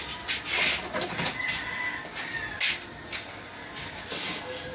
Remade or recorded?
recorded